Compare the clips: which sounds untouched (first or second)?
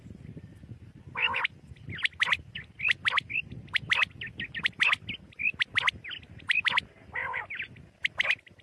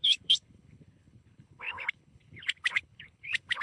first